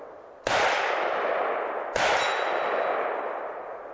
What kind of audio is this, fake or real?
real